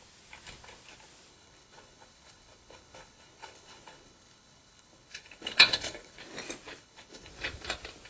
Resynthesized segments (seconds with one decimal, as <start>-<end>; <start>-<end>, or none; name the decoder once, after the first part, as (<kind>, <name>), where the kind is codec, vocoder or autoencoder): 1.3-6.2 (codec, HILCodec); 6.8-7.3

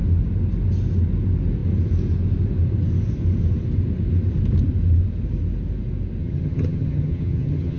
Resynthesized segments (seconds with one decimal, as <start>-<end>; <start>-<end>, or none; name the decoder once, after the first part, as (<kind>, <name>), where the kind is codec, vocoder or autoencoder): 6.2-7.8 (vocoder, HiFi-GAN)

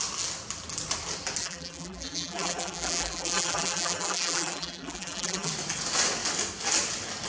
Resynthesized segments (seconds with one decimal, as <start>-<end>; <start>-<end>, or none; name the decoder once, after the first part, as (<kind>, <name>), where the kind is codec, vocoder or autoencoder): 1.4-5.5 (vocoder, BigVGAN v2)

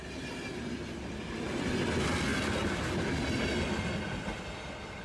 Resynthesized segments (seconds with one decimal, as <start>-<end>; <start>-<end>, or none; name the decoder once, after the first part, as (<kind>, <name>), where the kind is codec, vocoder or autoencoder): none

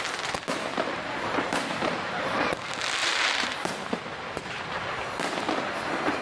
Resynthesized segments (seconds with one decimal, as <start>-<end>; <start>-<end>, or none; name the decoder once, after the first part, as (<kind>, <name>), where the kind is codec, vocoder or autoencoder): 0.7-2.3 (vocoder, BigVGAN v2); 3.0-5.0